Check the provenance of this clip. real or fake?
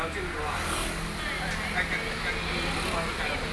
real